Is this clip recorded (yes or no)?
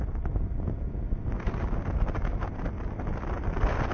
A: yes